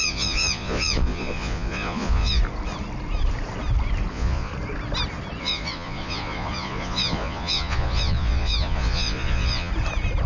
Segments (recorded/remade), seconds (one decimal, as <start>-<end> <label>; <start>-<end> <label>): 0.0-2.4 remade; 2.4-4.1 recorded; 4.1-4.5 remade; 4.5-5.4 recorded; 5.4-9.7 remade; 9.7-10.3 recorded